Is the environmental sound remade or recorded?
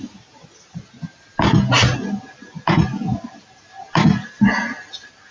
recorded